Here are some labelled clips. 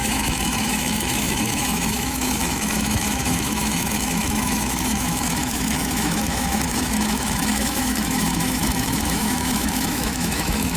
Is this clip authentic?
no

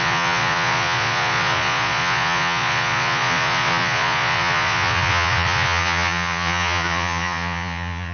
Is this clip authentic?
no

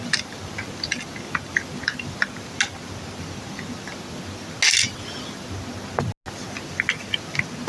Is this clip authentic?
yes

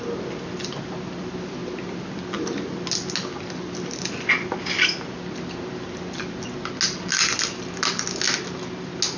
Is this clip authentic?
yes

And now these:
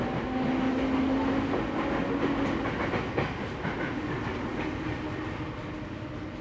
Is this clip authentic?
yes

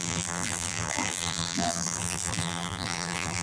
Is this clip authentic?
no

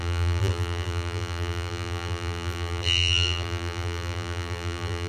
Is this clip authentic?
no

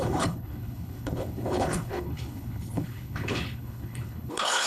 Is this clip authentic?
no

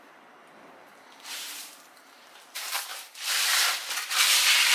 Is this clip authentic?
no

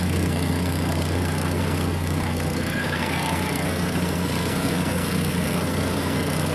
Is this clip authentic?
no